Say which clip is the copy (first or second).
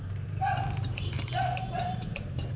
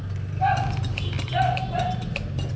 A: first